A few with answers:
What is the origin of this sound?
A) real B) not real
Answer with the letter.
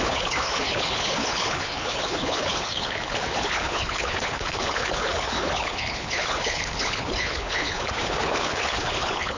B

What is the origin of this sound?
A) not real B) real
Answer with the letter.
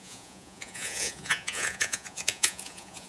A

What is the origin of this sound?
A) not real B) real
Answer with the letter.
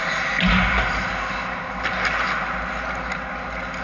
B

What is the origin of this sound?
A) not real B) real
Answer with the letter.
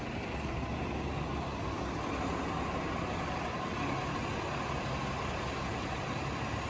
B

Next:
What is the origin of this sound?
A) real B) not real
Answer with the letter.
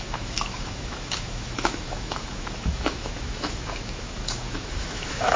B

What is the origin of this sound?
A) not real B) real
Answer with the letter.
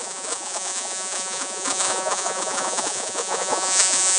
A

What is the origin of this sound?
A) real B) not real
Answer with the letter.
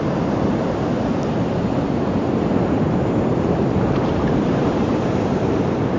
B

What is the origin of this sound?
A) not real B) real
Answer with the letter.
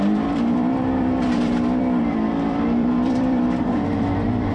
A